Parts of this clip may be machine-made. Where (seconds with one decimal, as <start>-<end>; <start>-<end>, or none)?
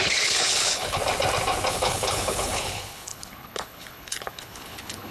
0.0-1.0; 1.7-5.1